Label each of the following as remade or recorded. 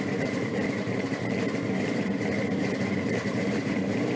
remade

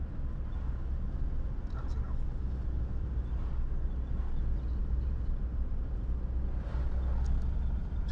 recorded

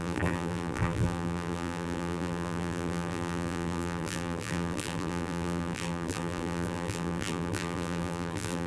remade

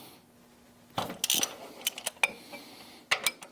recorded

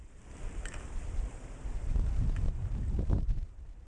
remade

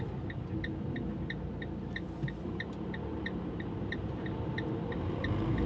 recorded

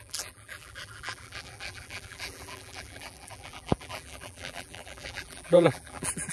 remade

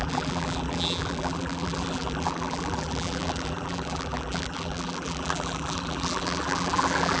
remade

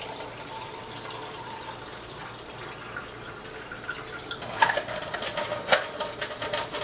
recorded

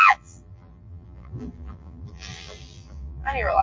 remade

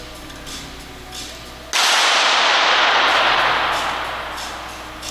recorded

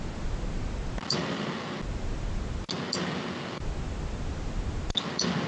recorded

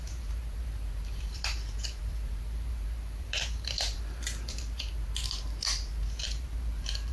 remade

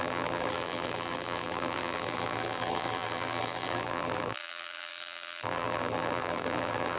remade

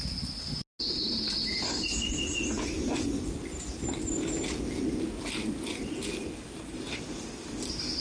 recorded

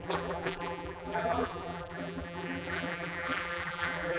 remade